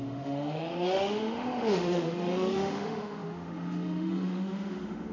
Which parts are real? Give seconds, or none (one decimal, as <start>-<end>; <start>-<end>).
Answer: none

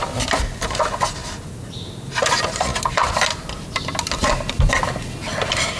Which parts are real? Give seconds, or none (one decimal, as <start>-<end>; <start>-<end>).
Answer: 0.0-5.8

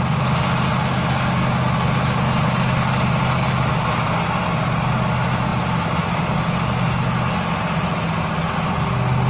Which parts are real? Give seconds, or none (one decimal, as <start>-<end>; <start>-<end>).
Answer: 0.0-9.3

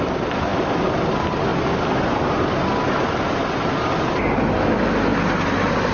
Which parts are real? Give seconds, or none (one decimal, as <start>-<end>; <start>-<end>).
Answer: 0.0-5.9